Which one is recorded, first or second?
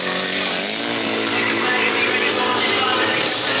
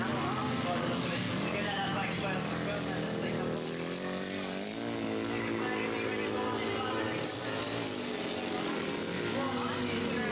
second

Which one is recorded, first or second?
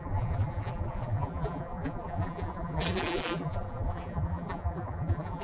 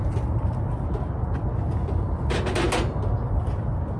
second